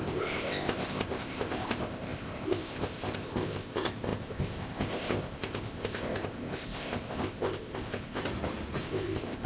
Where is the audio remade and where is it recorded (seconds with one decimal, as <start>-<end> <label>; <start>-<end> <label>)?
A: 0.0-8.2 remade; 8.2-8.8 recorded; 8.8-9.5 remade